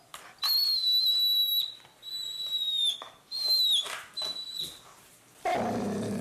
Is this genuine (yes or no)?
yes